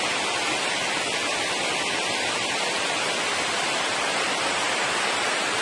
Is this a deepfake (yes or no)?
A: yes